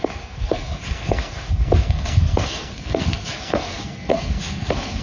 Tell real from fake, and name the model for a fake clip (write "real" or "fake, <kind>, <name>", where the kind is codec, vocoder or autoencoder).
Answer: fake, codec, SNAC